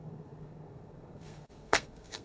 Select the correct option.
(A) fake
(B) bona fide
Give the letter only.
A